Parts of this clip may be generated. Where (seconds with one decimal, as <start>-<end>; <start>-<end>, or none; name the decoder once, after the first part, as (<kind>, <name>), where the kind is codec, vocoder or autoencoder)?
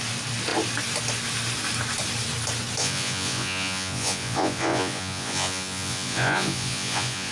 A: 2.8-7.3 (vocoder, Vocos)